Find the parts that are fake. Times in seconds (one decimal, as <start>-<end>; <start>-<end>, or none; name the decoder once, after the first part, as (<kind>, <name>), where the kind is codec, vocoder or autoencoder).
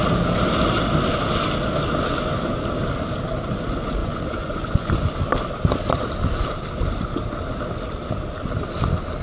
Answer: 4.0-5.1 (vocoder, Vocos)